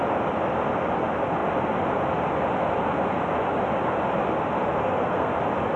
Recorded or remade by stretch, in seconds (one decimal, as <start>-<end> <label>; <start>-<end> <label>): 0.0-4.8 recorded; 4.8-5.3 remade; 5.3-5.8 recorded